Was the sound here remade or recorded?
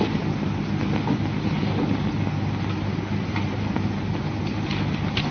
recorded